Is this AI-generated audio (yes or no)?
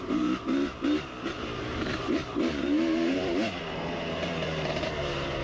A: yes